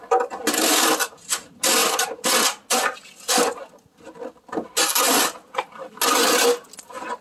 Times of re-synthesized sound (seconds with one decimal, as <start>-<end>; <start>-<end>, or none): none